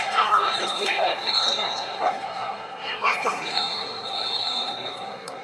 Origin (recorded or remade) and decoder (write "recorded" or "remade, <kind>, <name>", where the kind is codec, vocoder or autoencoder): remade, codec, SNAC